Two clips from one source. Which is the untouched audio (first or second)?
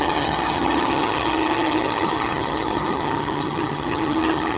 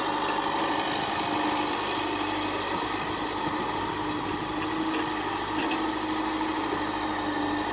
second